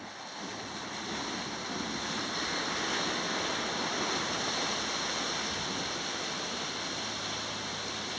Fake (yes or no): no